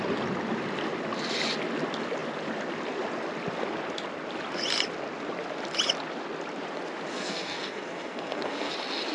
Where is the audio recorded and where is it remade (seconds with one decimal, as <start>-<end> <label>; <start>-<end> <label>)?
0.0-7.1 recorded; 7.1-8.7 remade; 8.7-9.1 recorded